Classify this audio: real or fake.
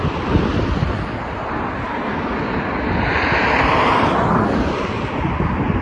real